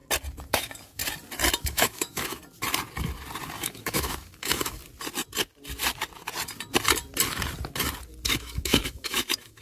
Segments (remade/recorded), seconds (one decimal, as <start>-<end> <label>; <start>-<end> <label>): 0.0-0.5 recorded; 0.5-1.0 remade; 1.0-1.6 recorded; 1.6-2.4 remade; 2.4-3.6 recorded; 3.6-4.8 remade; 4.8-8.3 recorded; 8.3-9.6 remade

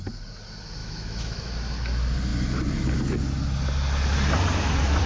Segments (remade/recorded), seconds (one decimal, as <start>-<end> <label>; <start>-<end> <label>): 0.0-0.8 recorded; 0.8-1.5 remade; 1.5-5.1 recorded

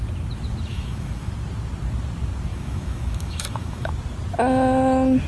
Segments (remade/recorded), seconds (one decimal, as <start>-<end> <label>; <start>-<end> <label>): 0.0-0.7 recorded; 0.7-1.3 remade; 1.3-2.5 recorded; 2.5-3.9 remade; 3.9-5.3 recorded